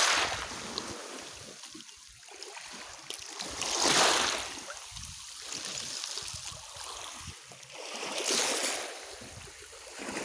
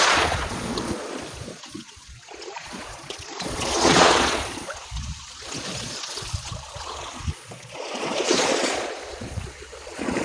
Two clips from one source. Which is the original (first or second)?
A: first